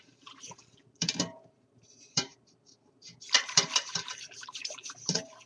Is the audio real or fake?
fake